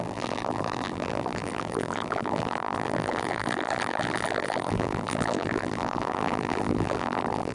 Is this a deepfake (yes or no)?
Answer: yes